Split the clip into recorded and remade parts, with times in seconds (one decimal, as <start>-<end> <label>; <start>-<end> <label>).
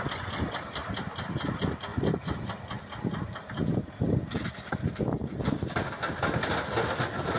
0.0-7.4 recorded